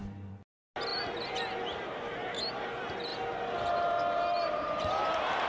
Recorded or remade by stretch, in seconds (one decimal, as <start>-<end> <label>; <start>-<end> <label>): 0.0-5.5 recorded